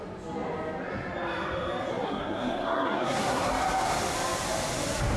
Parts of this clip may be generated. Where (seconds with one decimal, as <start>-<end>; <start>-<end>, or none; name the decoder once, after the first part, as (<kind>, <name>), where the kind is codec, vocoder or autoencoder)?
1.9-3.5 (codec, SNAC)